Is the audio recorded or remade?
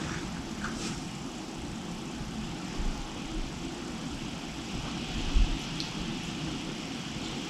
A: remade